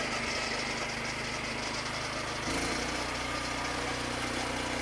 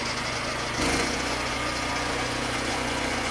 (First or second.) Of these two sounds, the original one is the first